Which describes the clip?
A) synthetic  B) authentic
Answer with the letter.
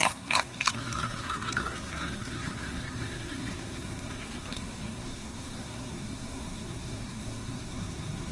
A